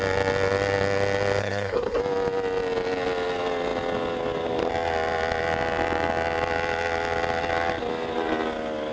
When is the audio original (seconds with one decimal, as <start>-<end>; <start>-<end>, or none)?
0.0-1.4; 2.0-8.9